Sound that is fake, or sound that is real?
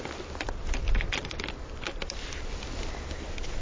real